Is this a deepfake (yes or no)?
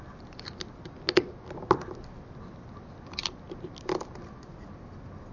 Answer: no